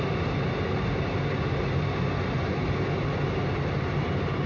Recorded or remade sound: recorded